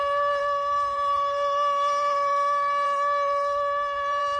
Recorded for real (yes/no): no